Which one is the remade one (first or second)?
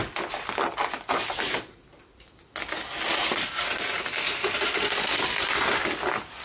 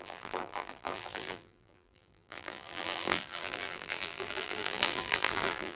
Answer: second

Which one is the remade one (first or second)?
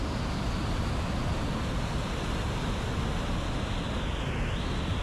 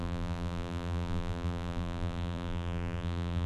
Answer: second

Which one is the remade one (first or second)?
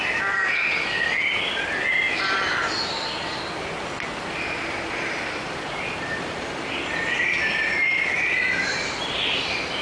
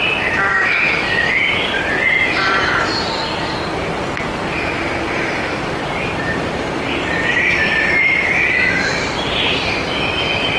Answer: second